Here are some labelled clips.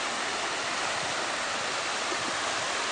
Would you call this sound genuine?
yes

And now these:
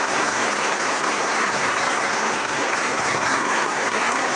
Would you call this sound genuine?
no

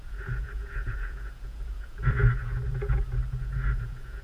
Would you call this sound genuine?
no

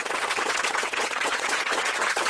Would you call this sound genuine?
no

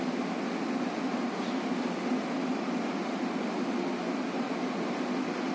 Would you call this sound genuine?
yes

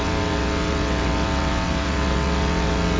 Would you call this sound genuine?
no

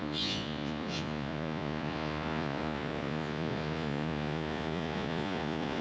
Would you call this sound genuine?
no